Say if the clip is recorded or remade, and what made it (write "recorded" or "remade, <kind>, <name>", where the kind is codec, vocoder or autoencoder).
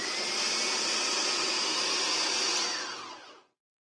recorded